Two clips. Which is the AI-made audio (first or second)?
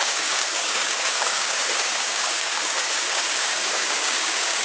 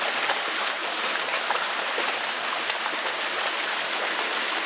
first